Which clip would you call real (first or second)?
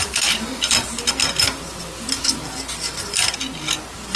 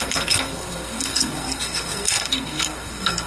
first